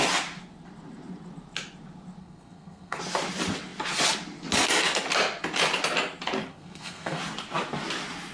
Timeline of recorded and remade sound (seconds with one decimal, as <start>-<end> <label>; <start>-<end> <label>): 0.0-2.2 recorded; 2.2-3.0 remade; 3.0-6.5 recorded; 6.5-7.2 remade; 7.2-8.3 recorded